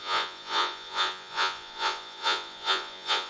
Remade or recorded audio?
remade